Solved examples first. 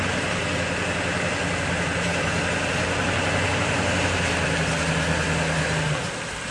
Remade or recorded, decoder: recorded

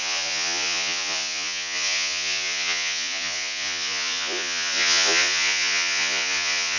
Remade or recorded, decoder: remade, vocoder, Vocos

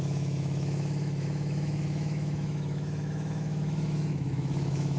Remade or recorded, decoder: remade, autoencoder, DAC-VAE